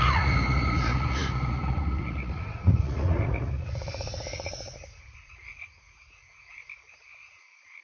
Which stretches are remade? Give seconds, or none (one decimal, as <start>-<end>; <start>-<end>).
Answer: 0.0-7.8